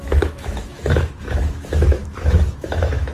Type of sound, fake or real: fake